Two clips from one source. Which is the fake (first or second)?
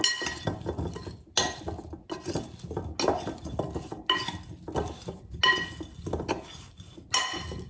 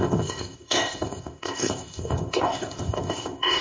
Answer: second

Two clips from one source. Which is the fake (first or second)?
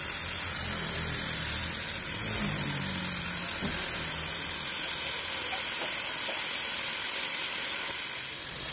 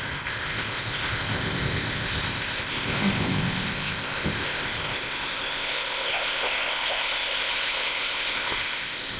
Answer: second